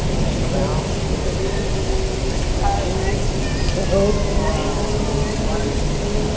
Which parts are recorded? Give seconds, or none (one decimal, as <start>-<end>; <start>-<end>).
0.0-6.4